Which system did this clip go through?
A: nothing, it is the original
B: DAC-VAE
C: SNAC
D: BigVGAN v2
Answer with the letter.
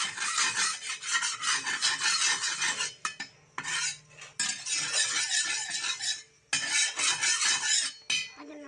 A